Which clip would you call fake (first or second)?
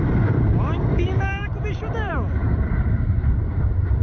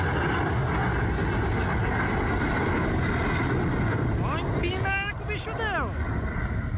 first